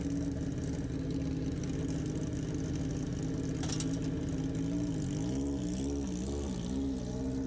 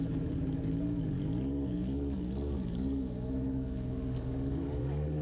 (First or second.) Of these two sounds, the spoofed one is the second